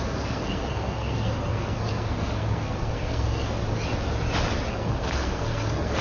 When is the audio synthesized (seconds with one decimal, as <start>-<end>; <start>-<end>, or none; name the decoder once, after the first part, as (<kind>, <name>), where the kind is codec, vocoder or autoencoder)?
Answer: 0.0-3.6 (codec, SNAC); 4.7-6.0